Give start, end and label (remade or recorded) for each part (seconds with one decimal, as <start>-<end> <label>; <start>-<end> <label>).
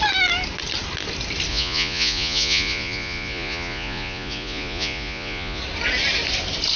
0.0-1.5 recorded; 1.5-5.6 remade; 5.6-6.8 recorded